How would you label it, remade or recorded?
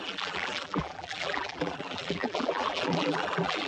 remade